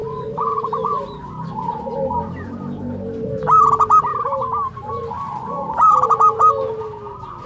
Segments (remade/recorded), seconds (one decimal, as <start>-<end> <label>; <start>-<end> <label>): 0.0-1.3 remade; 1.3-7.5 recorded